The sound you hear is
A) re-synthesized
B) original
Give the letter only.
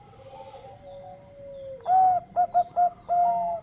B